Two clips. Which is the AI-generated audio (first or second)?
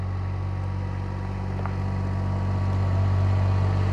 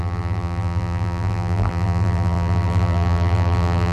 second